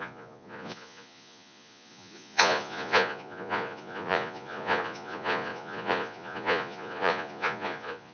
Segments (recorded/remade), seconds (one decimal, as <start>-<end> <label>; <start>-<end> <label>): 0.0-8.1 remade